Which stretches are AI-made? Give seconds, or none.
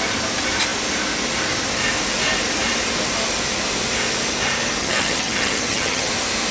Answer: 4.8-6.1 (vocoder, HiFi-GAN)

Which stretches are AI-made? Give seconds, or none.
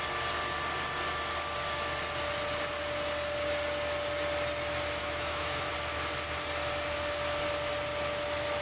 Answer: 5.0-5.6 (autoencoder, DAC-VAE)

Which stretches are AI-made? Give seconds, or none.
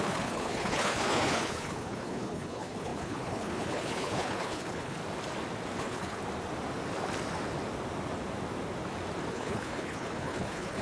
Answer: 0.0-5.0 (codec, HILCodec); 5.8-6.2; 9.3-10.8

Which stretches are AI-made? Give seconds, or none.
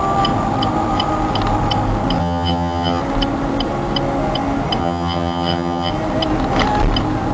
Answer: 2.2-3.0 (vocoder, HiFi-GAN); 4.8-5.9